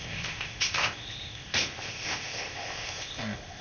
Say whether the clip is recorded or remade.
remade